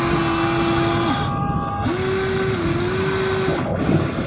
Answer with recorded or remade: recorded